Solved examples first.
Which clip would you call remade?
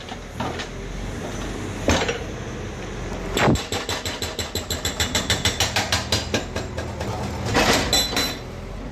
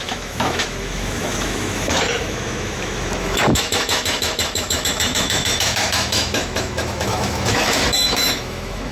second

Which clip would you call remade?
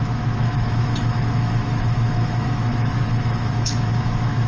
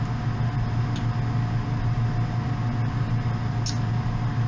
first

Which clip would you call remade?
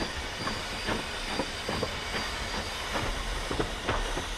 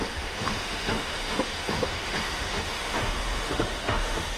second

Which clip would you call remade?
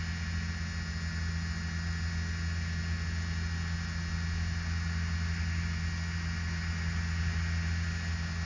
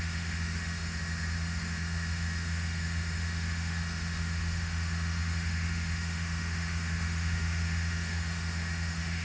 second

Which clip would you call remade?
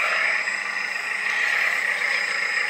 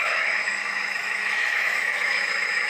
second